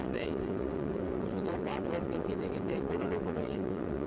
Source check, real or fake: fake